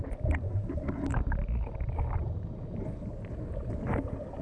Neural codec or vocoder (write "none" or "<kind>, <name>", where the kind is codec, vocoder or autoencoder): none